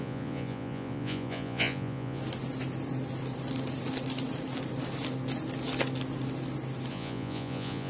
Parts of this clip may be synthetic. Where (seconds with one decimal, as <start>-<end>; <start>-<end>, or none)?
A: 0.0-2.2; 6.9-7.9